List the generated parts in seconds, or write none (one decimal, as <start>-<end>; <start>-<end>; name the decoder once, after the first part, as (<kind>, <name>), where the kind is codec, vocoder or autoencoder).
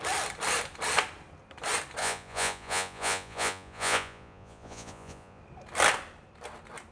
2.0-5.4 (vocoder, Vocos)